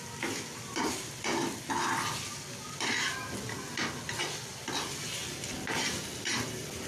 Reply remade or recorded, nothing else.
recorded